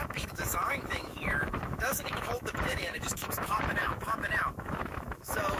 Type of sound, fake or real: fake